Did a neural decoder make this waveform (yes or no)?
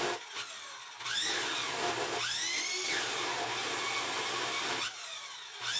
no